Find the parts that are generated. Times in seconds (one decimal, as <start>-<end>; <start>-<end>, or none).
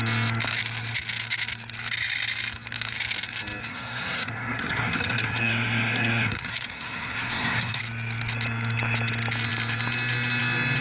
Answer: 3.7-7.8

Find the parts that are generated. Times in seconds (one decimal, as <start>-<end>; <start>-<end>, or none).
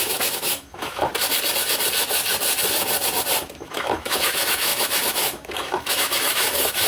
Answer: 0.0-1.1; 3.4-6.9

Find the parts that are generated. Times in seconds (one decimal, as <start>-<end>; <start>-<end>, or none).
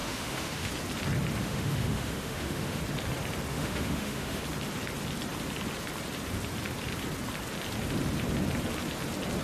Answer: 0.0-0.7; 1.4-2.8; 3.5-4.4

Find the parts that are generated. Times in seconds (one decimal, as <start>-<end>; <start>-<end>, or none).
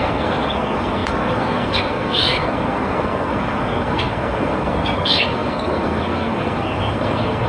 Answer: 0.0-7.5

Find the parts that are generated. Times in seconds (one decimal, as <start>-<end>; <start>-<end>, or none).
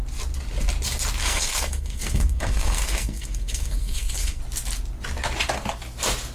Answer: 1.2-4.4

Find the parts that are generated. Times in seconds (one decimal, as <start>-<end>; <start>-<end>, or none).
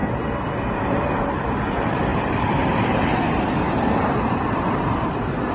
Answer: 0.8-5.5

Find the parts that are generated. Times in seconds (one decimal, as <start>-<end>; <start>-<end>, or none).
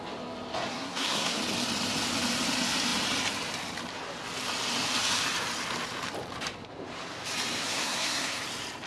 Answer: 0.7-1.4; 7.6-8.4